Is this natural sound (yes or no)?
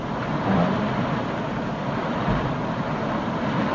yes